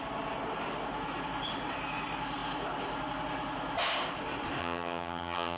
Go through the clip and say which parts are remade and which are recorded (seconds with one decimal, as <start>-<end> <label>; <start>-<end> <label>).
0.0-4.6 recorded; 4.6-5.6 remade